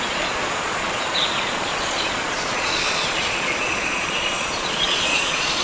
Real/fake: fake